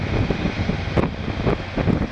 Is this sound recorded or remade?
recorded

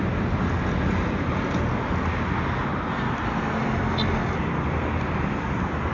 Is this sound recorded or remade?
recorded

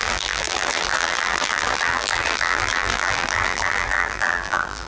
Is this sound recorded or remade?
remade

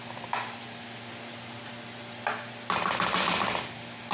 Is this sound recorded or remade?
recorded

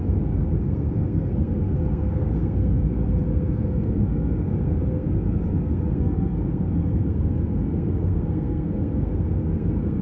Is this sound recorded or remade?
remade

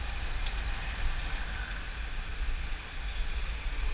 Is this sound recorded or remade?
recorded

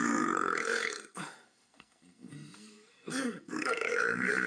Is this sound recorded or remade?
remade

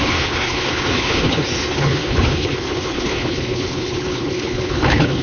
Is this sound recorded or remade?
remade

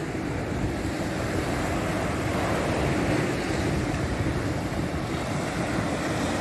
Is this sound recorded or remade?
recorded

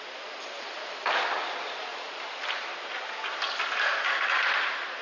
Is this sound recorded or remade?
recorded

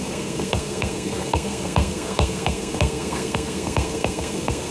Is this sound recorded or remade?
remade